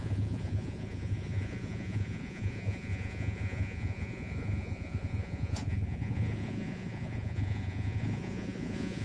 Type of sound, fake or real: fake